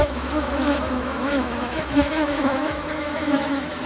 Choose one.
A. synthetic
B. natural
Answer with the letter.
A